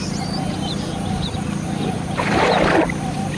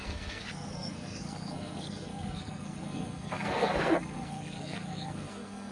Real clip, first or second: first